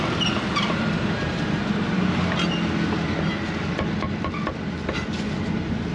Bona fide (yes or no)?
yes